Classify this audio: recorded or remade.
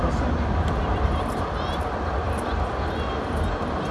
recorded